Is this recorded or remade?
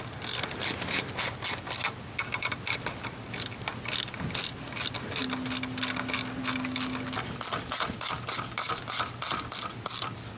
recorded